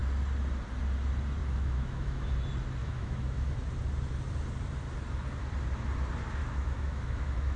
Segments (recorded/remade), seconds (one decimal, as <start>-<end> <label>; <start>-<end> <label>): 0.0-1.4 recorded; 1.4-2.3 remade; 2.3-2.8 recorded; 2.8-3.5 remade; 3.5-6.4 recorded; 6.4-7.6 remade